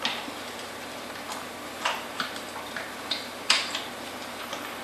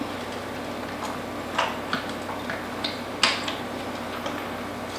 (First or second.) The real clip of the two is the second